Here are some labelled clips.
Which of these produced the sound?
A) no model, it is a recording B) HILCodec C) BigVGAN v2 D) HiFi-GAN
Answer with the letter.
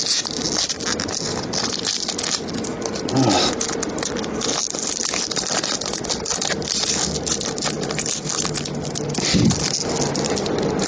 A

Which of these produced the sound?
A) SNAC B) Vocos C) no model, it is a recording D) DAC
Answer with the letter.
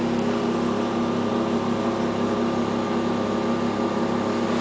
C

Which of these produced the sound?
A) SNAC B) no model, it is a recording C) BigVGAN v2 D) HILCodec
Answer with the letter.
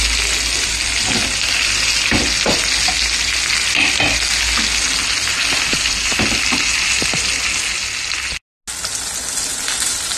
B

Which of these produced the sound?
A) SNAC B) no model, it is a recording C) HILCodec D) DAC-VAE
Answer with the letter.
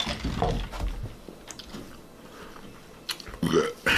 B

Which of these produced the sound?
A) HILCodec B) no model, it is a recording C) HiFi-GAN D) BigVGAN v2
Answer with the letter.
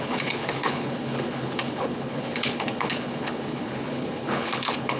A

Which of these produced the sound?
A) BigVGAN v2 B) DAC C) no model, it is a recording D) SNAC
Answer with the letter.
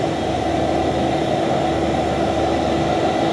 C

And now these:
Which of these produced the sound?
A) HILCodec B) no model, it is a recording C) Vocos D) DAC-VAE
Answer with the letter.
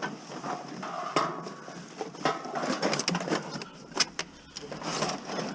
B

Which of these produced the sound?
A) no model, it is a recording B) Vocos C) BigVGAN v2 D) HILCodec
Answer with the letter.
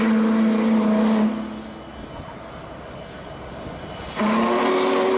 A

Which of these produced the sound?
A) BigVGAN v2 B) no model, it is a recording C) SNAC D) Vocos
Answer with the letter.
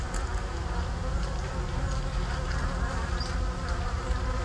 B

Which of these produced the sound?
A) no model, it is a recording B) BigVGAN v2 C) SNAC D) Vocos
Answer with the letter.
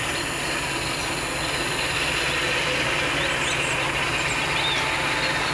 A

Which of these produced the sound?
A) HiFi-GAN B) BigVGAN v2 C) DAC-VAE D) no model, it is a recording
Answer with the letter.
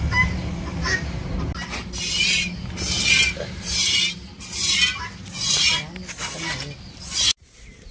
D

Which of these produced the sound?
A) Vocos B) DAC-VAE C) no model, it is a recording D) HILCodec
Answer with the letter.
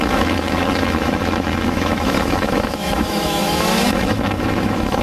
B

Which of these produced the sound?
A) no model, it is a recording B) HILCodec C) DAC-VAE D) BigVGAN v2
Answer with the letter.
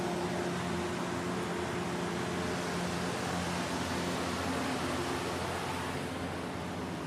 A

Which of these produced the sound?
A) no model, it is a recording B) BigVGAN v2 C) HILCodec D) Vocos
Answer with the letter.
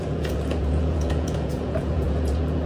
D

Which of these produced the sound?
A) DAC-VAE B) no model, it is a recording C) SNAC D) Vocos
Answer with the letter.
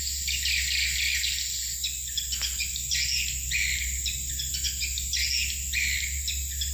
B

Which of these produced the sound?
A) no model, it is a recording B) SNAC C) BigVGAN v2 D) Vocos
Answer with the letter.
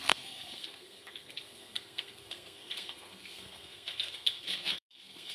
B